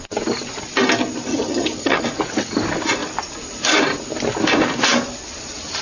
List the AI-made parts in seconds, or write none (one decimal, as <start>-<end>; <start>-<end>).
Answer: 1.3-2.0